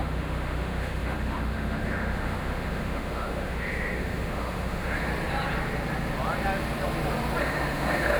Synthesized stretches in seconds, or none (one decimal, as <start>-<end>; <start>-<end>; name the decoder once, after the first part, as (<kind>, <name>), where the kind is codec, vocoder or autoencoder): 0.0-5.1 (autoencoder, DAC-VAE); 7.4-8.2